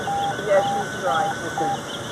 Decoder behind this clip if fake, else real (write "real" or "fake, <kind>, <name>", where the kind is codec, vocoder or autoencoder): real